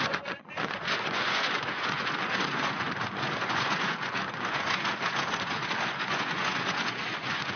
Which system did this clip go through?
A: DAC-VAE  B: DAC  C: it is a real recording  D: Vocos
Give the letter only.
D